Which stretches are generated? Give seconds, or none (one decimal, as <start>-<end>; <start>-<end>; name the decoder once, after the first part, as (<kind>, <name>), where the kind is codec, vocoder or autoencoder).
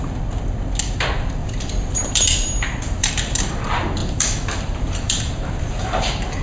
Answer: 1.4-3.1 (vocoder, BigVGAN v2); 4.0-5.7